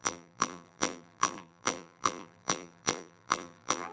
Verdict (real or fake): fake